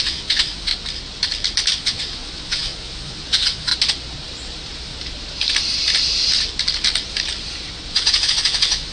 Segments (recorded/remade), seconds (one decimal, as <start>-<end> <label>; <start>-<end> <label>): 0.0-0.7 remade; 0.7-1.8 recorded; 1.8-3.7 remade; 3.7-7.9 recorded; 7.9-8.9 remade